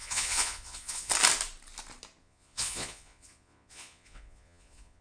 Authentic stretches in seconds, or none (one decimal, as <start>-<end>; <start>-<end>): 1.1-2.2